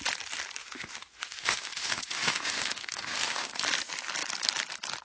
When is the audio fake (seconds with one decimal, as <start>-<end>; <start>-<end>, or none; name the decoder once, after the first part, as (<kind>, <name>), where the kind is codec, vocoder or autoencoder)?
0.6-3.6 (autoencoder, DAC-VAE)